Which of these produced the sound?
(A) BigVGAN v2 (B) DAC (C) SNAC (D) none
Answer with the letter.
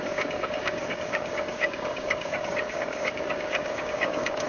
B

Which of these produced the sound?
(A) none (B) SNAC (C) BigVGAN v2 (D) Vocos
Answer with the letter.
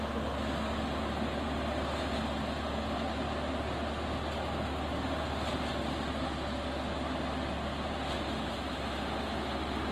A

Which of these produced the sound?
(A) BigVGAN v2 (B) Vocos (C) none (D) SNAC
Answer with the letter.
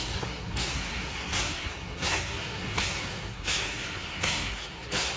D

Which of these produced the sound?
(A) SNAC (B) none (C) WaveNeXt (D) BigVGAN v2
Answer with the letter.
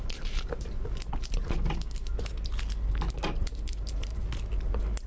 B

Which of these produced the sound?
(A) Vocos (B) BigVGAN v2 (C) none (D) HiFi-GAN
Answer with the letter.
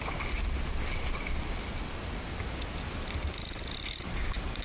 C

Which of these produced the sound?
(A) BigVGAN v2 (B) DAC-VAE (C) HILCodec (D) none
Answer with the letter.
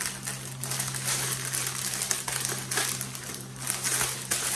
D